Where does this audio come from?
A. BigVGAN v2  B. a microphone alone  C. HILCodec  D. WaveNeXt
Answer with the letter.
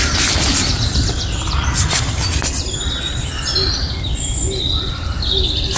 A